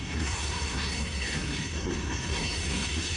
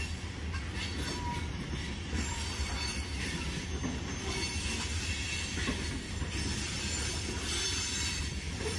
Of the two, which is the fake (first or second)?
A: first